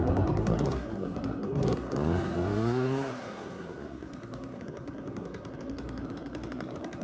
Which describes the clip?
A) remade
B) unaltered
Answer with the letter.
A